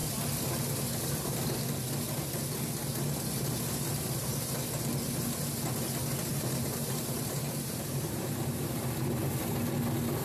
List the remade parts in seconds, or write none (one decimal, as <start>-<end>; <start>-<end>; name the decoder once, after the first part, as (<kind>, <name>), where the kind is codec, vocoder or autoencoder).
6.3-8.8 (vocoder, BigVGAN v2)